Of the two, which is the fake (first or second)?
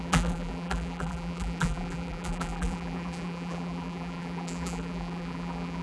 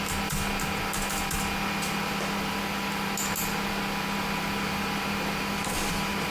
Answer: first